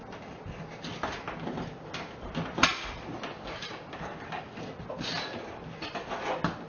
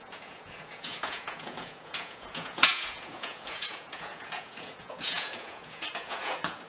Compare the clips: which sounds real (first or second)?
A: first